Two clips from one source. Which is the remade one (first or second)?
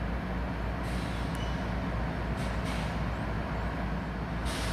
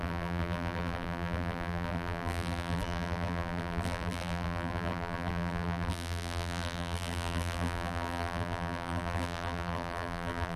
second